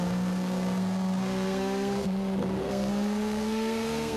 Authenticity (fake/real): fake